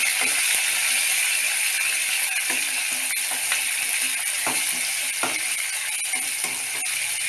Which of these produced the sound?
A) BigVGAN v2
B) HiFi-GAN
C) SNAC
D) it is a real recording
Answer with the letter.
D